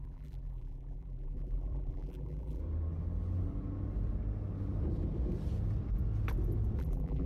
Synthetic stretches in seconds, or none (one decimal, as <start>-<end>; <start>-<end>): 0.0-2.6; 6.8-7.3